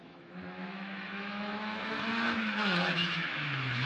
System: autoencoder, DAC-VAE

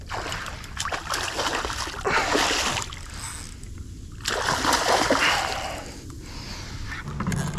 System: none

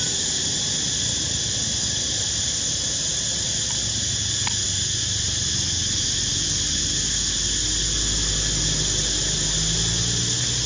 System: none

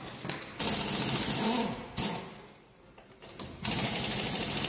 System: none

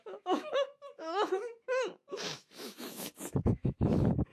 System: autoencoder, DAC-VAE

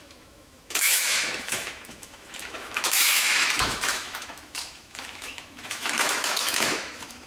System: autoencoder, DAC-VAE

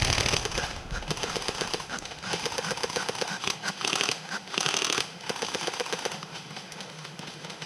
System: autoencoder, DAC-VAE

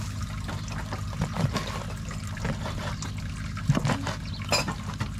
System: none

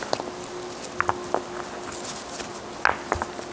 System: none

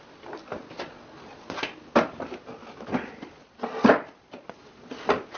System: none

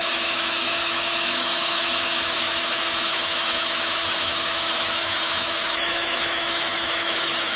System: autoencoder, DAC-VAE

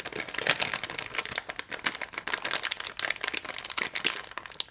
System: none